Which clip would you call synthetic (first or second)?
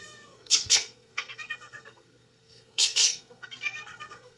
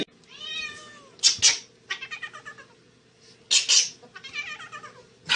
first